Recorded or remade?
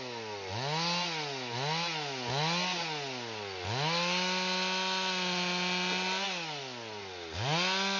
recorded